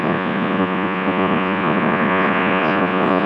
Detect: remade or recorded remade